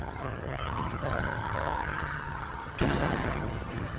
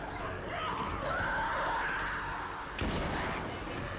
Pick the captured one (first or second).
second